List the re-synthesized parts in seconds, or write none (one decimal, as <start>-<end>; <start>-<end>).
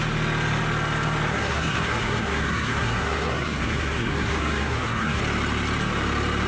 1.3-5.2